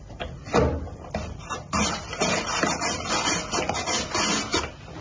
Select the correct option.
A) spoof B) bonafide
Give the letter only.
B